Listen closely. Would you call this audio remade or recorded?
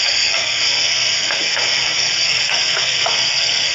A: remade